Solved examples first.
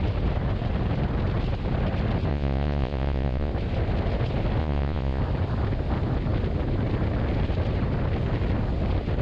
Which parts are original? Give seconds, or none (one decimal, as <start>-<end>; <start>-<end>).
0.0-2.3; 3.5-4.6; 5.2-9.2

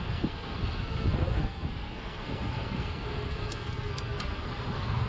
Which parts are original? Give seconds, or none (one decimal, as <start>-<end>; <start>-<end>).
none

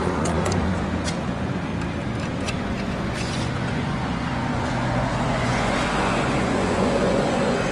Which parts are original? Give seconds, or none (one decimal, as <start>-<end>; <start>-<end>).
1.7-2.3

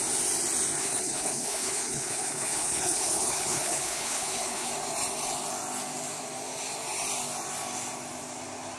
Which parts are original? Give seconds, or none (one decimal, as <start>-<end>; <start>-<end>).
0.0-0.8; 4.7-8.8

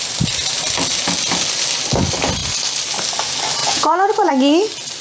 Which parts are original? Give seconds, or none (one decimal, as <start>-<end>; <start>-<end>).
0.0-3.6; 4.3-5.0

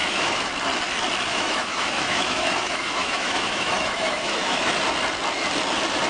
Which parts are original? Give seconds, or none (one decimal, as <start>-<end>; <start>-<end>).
0.5-1.3; 4.7-6.1

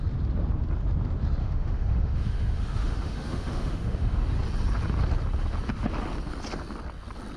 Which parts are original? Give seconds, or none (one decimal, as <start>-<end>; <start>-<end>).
0.0-1.4; 4.2-7.4

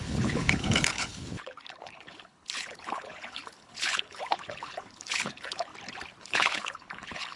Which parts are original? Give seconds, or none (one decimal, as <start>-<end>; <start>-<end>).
5.7-6.2